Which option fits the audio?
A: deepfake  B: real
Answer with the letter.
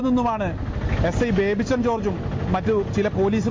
B